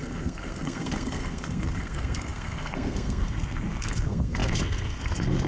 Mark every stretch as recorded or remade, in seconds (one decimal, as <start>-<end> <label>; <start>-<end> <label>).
0.0-5.5 remade